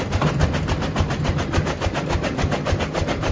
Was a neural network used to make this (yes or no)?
no